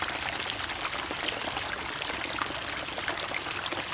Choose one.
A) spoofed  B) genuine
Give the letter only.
B